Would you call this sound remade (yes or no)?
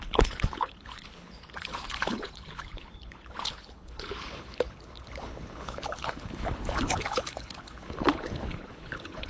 yes